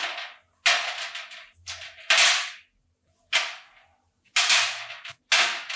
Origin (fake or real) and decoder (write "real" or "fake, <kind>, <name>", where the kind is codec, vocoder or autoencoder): real